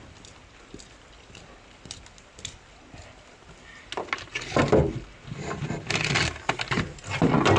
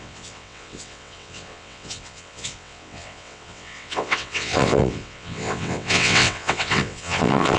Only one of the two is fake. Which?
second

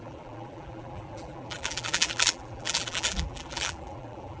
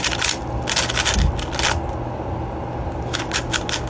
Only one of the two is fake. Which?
first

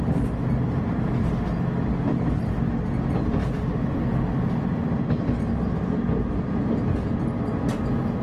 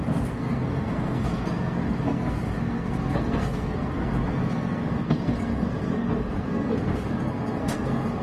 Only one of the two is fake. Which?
second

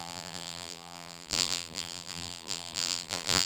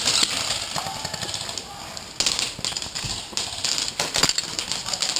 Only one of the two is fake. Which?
first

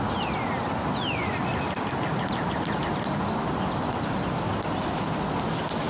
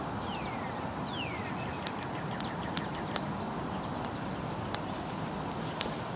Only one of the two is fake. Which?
second